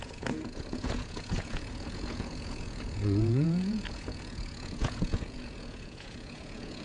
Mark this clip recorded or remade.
remade